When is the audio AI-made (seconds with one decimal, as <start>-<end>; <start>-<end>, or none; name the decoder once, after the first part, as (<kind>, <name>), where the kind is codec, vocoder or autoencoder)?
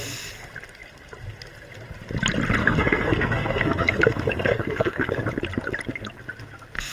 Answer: 2.6-5.2 (codec, SNAC)